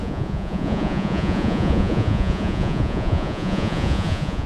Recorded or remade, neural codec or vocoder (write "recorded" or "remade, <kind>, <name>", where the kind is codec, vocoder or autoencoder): remade, vocoder, Vocos